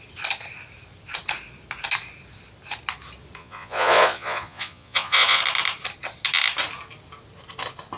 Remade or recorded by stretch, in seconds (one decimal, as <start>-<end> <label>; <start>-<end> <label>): 0.0-3.4 recorded; 3.4-5.4 remade; 5.4-8.0 recorded